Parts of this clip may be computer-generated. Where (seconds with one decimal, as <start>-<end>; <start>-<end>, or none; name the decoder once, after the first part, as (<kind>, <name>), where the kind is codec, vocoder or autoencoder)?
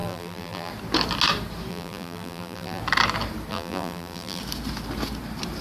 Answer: 0.0-0.7 (vocoder, BigVGAN v2); 1.7-2.8; 3.5-4.4